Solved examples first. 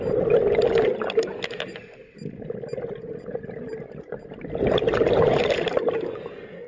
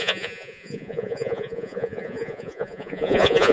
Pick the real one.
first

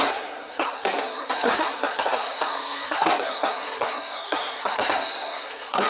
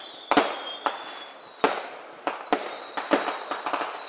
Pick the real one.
second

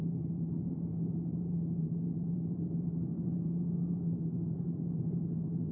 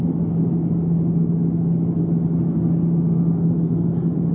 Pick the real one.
second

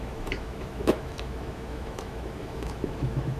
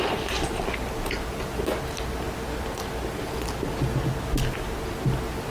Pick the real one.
second